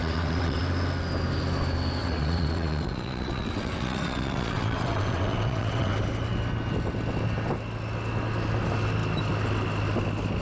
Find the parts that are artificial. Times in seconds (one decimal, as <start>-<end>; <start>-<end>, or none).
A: 0.0-0.6; 2.0-5.9